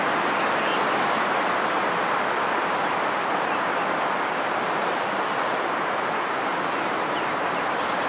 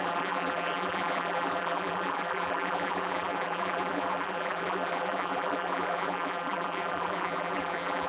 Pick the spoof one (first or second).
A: second